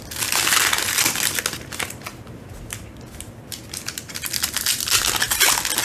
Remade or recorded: recorded